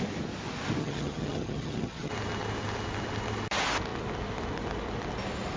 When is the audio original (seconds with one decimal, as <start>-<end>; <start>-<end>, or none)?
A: 0.0-0.8; 2.1-5.6